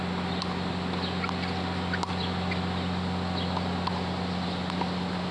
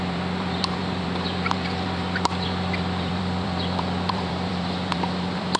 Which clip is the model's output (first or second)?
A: second